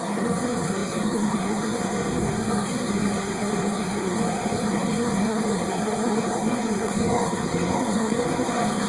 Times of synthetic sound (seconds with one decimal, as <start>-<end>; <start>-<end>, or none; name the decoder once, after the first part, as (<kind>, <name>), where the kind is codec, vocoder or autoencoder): 0.0-8.9 (codec, SNAC)